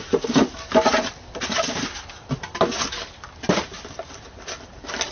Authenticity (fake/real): real